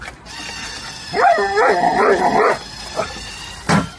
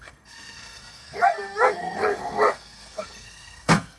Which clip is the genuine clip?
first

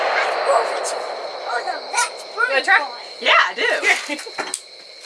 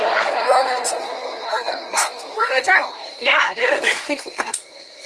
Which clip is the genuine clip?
first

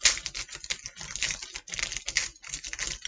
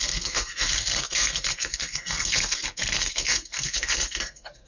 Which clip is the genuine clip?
first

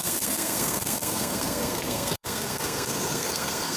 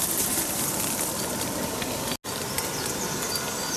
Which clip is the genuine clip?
second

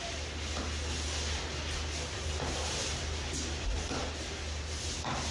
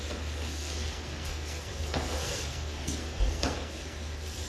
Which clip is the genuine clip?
first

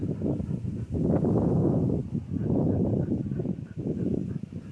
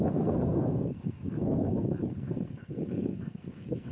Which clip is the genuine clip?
first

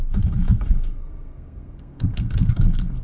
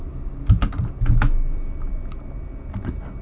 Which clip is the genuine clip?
second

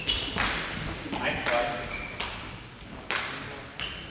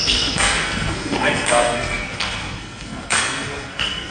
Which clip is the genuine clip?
first